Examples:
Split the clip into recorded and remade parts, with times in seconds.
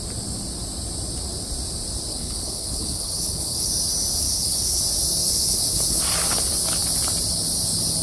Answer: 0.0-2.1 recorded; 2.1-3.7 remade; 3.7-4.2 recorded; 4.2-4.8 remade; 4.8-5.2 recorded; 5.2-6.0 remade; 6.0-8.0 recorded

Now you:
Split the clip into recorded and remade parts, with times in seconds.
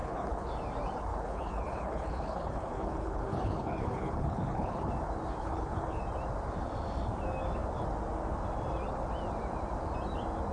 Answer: 0.0-0.5 remade; 0.5-1.1 recorded; 1.1-4.9 remade; 4.9-5.4 recorded; 5.4-6.0 remade; 6.0-10.5 recorded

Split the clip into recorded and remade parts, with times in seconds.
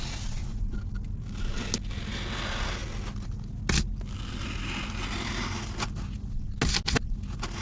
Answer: 0.0-7.6 recorded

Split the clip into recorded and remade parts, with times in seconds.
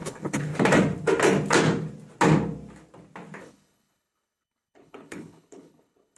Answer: 0.0-0.5 remade; 0.5-3.4 recorded; 3.4-6.2 remade